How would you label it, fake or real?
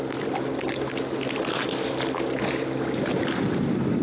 real